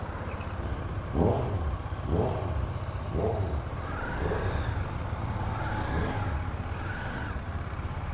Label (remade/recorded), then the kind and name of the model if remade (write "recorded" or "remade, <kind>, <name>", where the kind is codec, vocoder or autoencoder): recorded